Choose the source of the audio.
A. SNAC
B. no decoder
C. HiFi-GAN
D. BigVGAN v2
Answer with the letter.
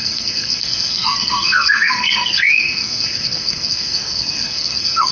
A